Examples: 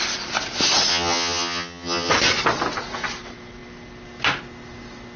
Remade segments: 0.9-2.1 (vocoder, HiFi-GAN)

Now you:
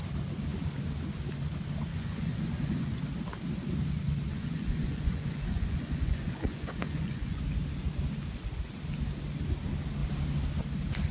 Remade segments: 1.9-3.0 (vocoder, Vocos); 4.3-7.4